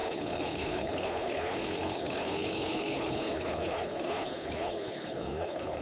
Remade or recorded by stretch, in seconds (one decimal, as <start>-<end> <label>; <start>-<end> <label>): 0.0-5.8 remade